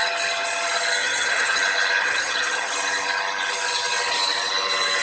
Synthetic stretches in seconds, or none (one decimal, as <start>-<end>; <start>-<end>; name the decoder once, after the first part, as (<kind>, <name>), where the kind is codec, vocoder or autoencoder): 1.0-1.6 (vocoder, HiFi-GAN); 2.0-2.7